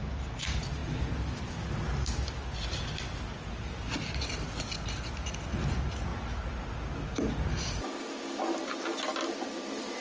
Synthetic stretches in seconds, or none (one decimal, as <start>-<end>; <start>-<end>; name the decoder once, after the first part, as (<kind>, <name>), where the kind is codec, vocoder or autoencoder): none